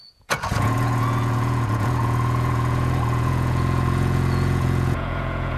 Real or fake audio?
fake